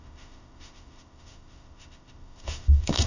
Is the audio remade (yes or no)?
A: yes